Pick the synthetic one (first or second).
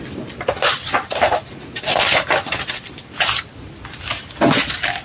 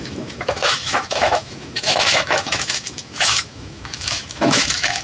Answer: second